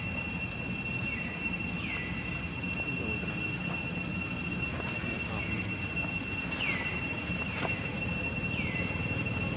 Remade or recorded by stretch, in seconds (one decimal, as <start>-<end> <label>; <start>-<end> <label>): 0.0-6.9 recorded; 6.9-8.1 remade; 8.1-9.6 recorded